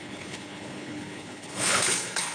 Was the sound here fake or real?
fake